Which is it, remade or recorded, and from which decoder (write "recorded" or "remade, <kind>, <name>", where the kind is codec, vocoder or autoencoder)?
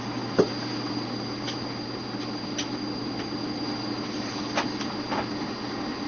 recorded